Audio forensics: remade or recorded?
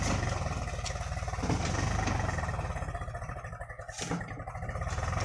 recorded